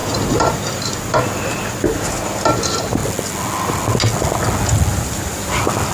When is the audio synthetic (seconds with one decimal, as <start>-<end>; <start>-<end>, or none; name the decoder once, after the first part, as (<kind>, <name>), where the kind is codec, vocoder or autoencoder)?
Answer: 0.0-1.0 (vocoder, BigVGAN v2); 4.9-5.5